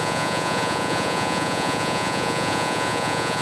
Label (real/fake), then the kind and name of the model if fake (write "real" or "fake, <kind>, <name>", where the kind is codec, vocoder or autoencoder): fake, vocoder, Vocos